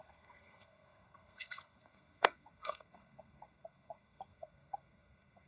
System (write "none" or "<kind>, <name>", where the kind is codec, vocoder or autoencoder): codec, SNAC